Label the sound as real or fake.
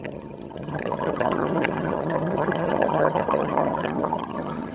fake